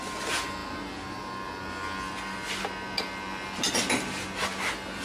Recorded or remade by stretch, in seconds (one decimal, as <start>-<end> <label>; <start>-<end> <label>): 0.0-5.0 recorded